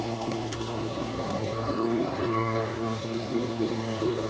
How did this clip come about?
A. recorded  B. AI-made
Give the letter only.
B